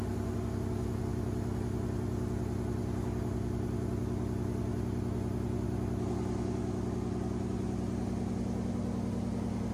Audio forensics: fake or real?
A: real